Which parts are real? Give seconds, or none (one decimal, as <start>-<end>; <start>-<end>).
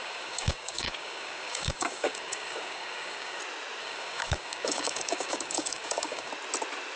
3.4-3.8; 6.3-7.0